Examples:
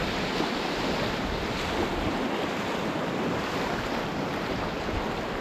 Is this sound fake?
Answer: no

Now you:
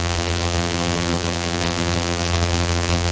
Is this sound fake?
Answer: yes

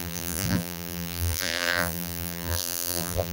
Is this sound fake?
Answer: yes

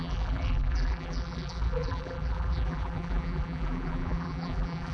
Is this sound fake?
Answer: yes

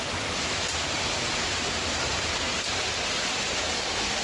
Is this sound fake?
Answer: no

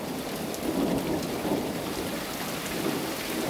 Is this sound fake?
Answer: no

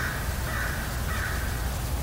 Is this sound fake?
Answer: no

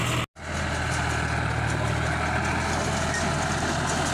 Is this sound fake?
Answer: no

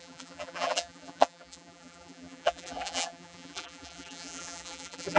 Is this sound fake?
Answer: yes